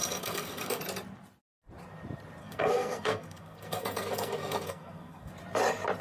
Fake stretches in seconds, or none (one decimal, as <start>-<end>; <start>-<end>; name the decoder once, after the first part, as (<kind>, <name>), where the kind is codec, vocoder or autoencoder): 0.0-0.8 (codec, SNAC); 2.4-5.3